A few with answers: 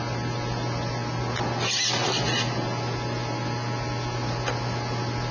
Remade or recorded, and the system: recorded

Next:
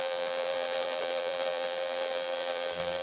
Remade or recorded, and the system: remade, vocoder, BigVGAN v2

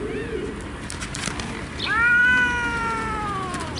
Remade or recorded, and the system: recorded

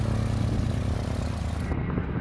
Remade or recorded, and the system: recorded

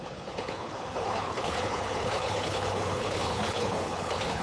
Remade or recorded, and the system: remade, codec, HILCodec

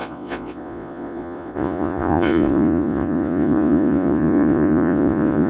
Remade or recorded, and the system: remade, vocoder, Vocos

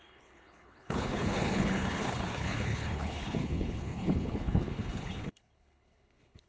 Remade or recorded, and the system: remade, codec, HILCodec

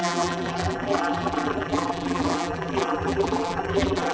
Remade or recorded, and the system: remade, vocoder, BigVGAN v2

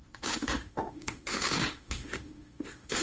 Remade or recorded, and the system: remade, autoencoder, DAC-VAE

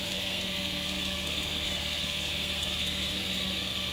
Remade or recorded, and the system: remade, codec, SNAC